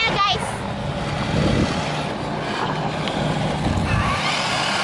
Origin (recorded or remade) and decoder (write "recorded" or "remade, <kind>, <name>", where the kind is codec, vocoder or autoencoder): recorded